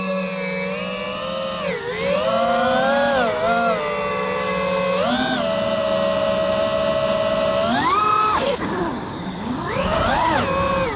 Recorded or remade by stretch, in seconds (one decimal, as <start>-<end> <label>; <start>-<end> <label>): 0.0-8.2 recorded; 8.2-10.0 remade; 10.0-11.0 recorded